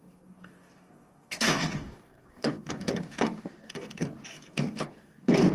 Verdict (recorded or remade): remade